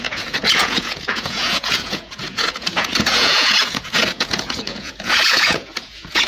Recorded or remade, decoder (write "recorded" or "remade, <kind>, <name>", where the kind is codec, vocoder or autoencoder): remade, vocoder, Vocos